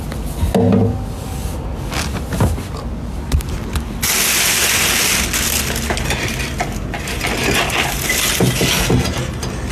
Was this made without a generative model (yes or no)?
yes